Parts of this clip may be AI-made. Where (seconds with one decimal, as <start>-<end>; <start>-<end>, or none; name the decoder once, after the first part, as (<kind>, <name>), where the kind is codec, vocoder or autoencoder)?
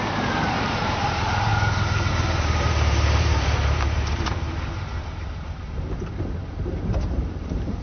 0.0-1.5 (vocoder, BigVGAN v2); 2.1-7.8